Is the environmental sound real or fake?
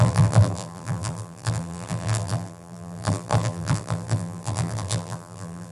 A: fake